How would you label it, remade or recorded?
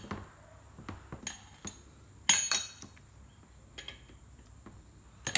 recorded